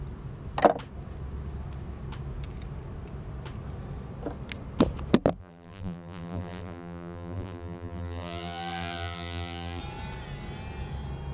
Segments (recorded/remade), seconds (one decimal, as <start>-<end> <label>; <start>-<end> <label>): 0.0-5.4 recorded; 5.4-9.8 remade; 9.8-11.3 recorded